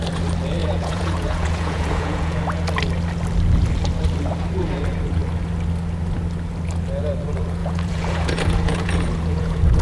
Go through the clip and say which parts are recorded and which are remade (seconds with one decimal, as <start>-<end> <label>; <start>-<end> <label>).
0.0-0.6 recorded; 0.6-2.4 remade; 2.4-7.6 recorded; 7.6-9.8 remade